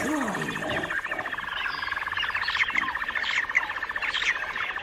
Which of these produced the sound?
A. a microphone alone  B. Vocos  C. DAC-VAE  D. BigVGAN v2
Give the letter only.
A